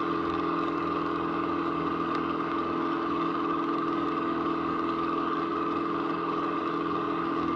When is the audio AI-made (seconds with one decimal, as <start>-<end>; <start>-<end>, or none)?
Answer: 0.0-7.6

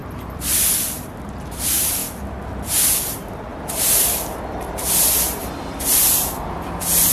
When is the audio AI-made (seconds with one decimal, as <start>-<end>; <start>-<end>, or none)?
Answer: 0.0-0.6; 3.5-7.1

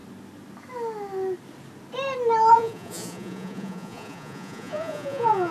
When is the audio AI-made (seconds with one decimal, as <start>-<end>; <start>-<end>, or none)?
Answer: 2.5-5.5

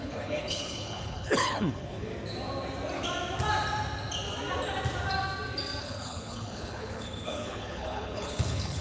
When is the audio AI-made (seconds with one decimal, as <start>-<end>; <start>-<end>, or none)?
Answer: 0.0-2.1; 5.8-8.8

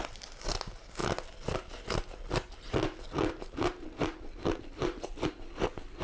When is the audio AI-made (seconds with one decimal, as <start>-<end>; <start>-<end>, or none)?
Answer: none

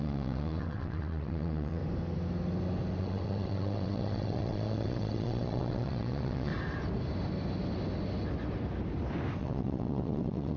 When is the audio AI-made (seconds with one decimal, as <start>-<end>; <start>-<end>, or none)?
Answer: 0.0-1.8; 3.0-6.5; 9.4-10.6